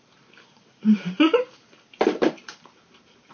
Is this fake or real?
fake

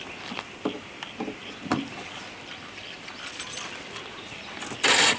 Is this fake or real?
fake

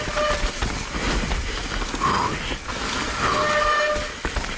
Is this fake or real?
real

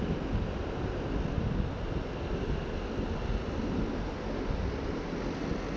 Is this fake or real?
real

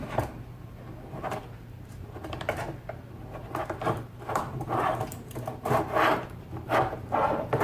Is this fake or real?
fake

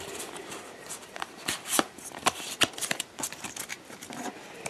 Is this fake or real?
fake